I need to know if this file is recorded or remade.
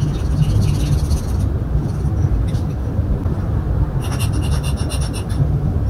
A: recorded